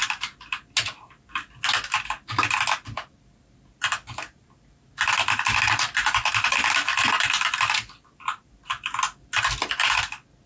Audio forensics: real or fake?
real